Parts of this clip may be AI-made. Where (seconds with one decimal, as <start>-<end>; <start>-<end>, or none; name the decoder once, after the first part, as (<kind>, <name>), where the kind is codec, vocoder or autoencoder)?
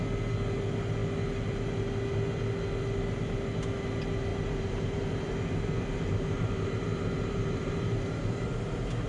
4.3-9.1 (vocoder, BigVGAN v2)